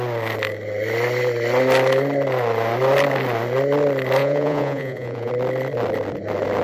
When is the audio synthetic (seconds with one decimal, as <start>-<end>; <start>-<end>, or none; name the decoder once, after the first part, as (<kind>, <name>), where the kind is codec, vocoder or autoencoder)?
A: 4.2-5.3 (vocoder, Vocos)